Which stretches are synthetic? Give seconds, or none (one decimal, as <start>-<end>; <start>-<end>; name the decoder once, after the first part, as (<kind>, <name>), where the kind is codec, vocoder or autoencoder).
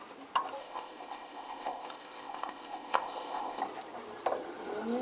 0.6-3.6 (codec, ZipCodec)